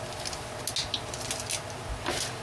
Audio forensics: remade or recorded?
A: recorded